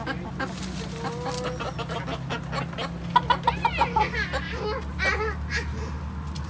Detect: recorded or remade recorded